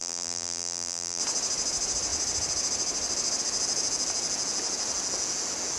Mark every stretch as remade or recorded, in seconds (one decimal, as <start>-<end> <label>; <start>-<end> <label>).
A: 0.0-1.2 remade; 1.2-5.8 recorded